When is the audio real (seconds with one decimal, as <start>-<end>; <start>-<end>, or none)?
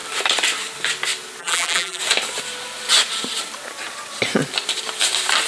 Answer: 0.0-1.4; 2.0-5.5